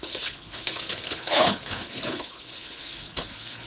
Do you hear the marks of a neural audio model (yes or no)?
yes